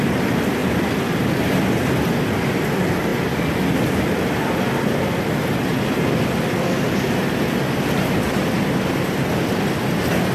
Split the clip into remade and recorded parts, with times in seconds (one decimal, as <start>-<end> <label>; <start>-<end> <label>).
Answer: 0.0-10.3 recorded